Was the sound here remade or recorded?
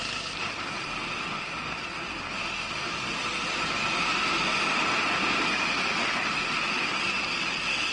remade